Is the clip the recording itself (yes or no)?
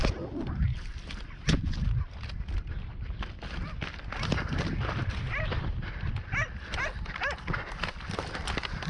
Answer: yes